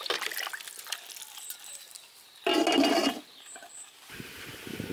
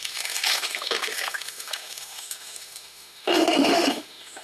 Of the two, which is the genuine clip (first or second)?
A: first